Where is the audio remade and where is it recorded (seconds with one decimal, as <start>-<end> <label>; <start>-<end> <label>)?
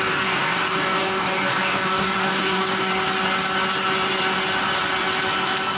0.0-2.9 remade; 2.9-5.8 recorded